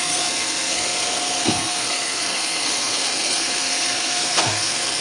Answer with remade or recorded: remade